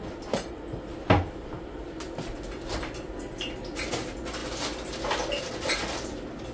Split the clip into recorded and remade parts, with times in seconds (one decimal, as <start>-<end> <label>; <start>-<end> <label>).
0.0-6.5 recorded